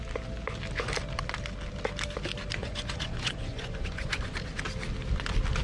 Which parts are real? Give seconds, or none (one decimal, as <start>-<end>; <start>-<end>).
0.0-2.6; 4.6-5.6